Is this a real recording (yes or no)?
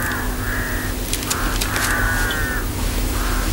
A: yes